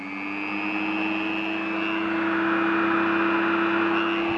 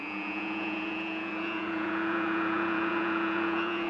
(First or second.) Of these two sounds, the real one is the first